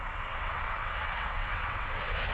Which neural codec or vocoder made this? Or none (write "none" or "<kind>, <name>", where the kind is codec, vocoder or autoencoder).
vocoder, WaveNeXt